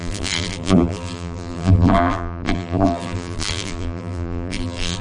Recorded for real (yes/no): no